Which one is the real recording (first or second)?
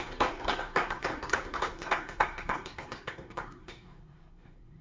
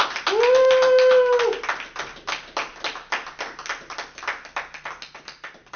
second